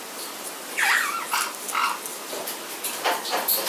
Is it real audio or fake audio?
real